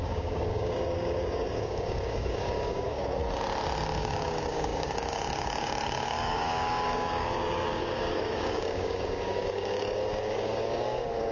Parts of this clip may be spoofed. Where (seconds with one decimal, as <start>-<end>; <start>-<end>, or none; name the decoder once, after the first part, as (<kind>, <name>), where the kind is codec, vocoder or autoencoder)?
0.0-3.2 (codec, DAC); 4.0-11.3